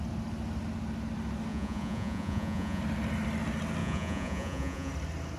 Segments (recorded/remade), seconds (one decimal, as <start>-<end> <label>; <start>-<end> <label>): 0.0-1.5 recorded; 1.5-2.8 remade; 2.8-3.8 recorded; 3.8-4.9 remade; 4.9-5.4 recorded